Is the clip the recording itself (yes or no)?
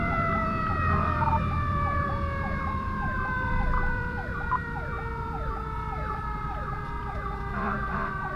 no